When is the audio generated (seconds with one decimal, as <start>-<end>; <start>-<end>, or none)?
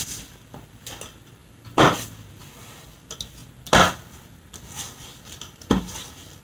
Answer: none